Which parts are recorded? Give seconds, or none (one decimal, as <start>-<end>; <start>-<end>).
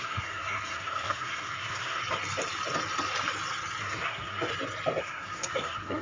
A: 2.0-3.8; 4.5-5.0